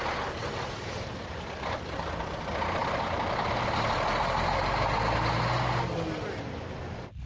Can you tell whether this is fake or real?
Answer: real